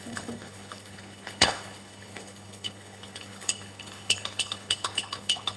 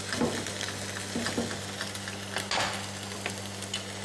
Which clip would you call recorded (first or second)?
second